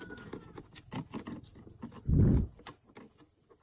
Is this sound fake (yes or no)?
no